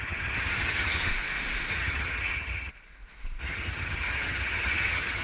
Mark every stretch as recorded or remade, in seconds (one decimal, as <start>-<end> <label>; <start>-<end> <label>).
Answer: 0.0-1.1 remade; 1.1-1.7 recorded; 1.7-2.7 remade; 2.7-3.4 recorded; 3.4-5.2 remade